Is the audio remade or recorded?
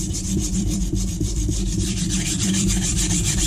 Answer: remade